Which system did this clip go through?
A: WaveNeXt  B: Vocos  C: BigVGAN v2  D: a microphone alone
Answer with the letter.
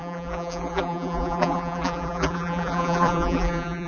C